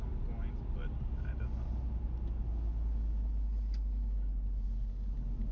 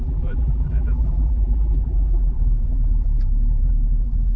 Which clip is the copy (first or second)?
second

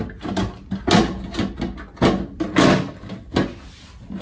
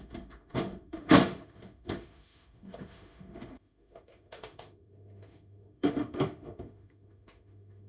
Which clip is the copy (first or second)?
second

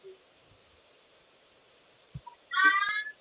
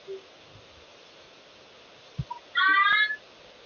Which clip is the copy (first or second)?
first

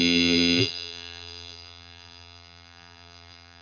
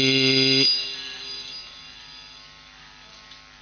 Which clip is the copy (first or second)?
first